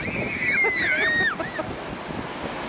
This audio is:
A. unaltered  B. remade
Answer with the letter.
A